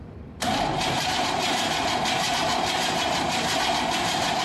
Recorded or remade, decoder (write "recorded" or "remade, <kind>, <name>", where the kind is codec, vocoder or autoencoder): remade, vocoder, BigVGAN v2